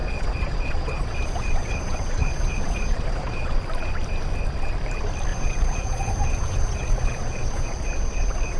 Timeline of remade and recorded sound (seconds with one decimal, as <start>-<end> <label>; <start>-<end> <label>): 0.0-3.6 remade; 3.6-5.3 recorded; 5.3-8.6 remade